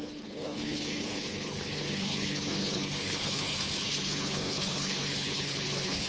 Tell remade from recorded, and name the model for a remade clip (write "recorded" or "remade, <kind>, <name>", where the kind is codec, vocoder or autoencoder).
remade, codec, HILCodec